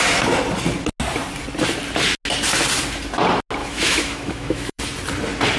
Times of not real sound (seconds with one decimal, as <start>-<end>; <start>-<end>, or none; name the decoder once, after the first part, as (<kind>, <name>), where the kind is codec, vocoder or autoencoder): 3.6-4.8 (autoencoder, DAC-VAE)